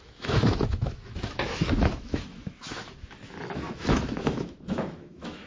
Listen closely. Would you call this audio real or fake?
fake